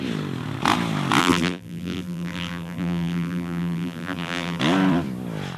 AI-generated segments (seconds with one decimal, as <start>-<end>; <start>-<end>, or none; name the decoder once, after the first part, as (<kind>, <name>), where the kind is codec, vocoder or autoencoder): 1.2-4.6 (vocoder, BigVGAN v2)